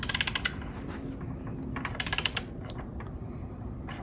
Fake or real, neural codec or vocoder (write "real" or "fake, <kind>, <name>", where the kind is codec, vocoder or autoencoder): real